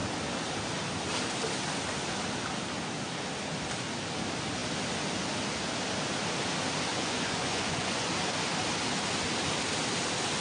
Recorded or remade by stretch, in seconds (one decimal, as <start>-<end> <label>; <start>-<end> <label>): 0.0-6.9 recorded; 6.9-8.1 remade; 8.1-10.4 recorded